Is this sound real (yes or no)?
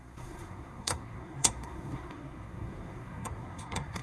no